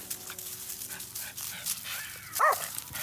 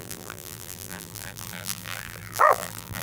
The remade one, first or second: second